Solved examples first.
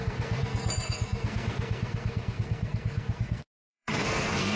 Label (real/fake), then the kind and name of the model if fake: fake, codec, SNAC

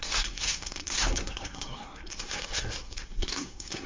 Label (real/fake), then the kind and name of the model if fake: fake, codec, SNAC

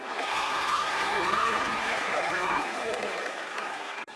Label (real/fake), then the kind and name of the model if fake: fake, codec, SNAC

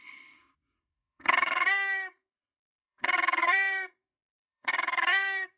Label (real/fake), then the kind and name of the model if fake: fake, codec, SNAC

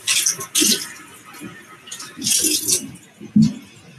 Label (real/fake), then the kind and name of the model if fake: real